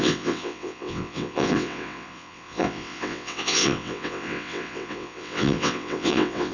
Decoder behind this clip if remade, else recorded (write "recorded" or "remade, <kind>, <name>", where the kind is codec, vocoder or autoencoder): remade, vocoder, WaveNeXt